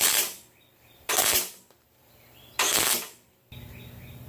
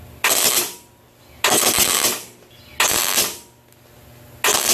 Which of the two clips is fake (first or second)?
first